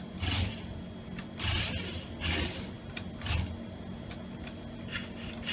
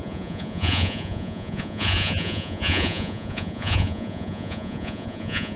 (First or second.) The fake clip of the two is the second